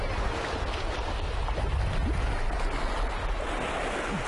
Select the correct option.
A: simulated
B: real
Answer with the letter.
B